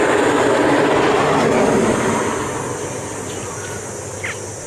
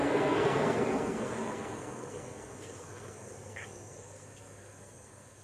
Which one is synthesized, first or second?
second